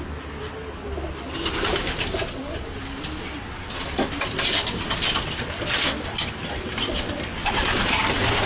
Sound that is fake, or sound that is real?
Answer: real